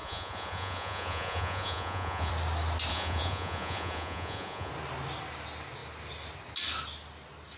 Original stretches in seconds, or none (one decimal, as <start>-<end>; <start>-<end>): 2.3-2.9; 4.7-7.6